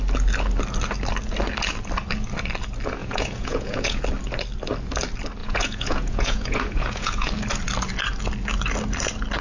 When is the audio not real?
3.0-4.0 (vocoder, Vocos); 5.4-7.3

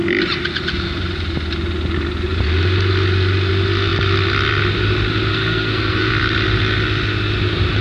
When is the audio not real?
5.3-6.1 (codec, SNAC)

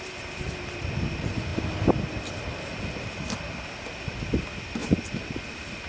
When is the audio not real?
none

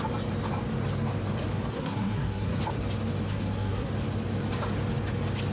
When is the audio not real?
1.7-2.6 (codec, SNAC); 3.3-3.9

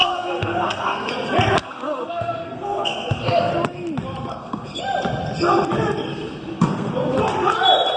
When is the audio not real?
0.0-1.1 (codec, SNAC); 1.6-3.5; 4.3-4.8; 6.1-6.9

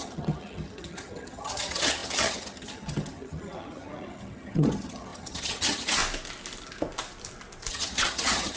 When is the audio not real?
0.0-6.0 (vocoder, HiFi-GAN); 7.7-8.6